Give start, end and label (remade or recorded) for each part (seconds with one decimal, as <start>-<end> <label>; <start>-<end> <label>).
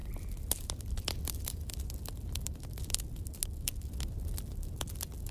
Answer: 0.0-5.3 recorded